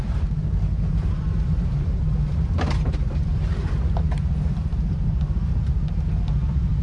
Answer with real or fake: fake